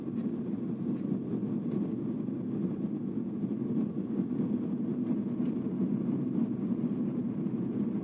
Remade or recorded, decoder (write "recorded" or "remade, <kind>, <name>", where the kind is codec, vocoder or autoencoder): recorded